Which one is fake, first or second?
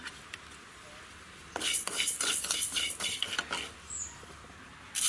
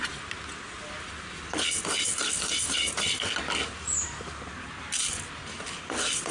first